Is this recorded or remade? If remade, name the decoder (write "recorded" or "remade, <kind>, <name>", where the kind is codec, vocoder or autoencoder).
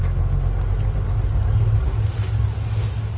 recorded